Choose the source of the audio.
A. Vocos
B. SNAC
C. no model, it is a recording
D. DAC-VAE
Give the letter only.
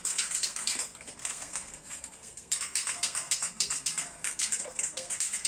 B